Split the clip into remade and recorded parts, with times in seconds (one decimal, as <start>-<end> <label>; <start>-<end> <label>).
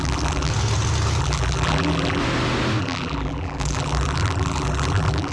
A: 0.0-0.5 remade; 0.5-1.2 recorded; 1.2-2.2 remade; 2.2-2.8 recorded; 2.8-5.3 remade